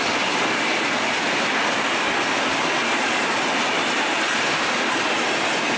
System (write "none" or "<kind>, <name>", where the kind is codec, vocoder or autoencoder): none